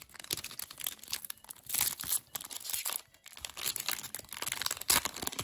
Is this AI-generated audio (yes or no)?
no